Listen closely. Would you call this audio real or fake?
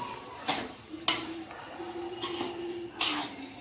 real